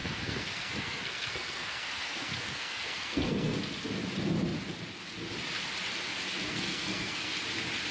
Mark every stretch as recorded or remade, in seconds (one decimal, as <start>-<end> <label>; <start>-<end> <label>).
0.0-3.6 remade; 3.6-6.5 recorded; 6.5-7.4 remade; 7.4-7.9 recorded